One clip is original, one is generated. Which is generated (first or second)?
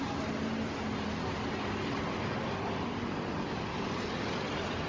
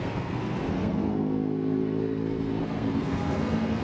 second